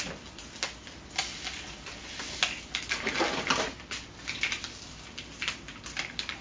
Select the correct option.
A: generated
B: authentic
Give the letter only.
B